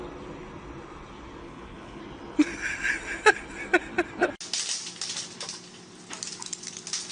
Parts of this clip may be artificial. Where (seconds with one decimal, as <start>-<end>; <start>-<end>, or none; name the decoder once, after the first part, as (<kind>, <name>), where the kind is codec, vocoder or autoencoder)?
1.4-2.0 (codec, HILCodec)